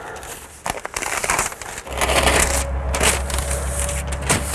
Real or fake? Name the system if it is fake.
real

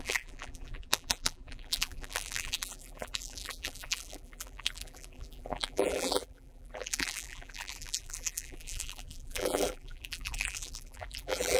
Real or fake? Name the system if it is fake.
fake, vocoder, BigVGAN v2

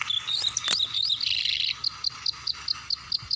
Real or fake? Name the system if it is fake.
real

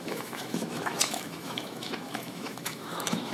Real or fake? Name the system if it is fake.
fake, autoencoder, DAC-VAE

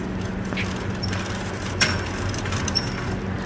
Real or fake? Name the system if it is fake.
real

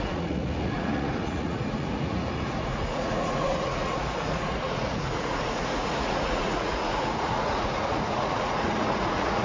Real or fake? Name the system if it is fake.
fake, vocoder, Vocos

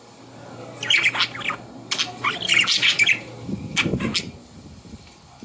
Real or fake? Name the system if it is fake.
real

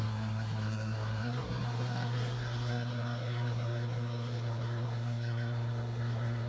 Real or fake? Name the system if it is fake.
fake, codec, SNAC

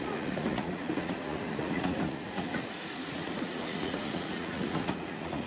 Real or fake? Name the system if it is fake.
fake, vocoder, Vocos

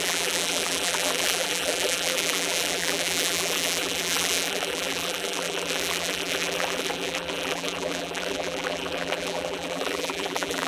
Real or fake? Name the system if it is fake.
fake, vocoder, BigVGAN v2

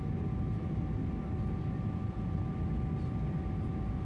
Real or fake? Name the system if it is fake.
real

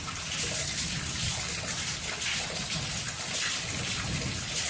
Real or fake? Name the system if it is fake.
real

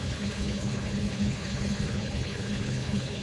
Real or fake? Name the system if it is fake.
fake, codec, HILCodec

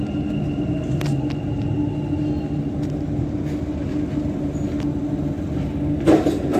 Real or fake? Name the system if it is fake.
real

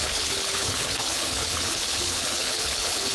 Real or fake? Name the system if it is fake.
fake, codec, HILCodec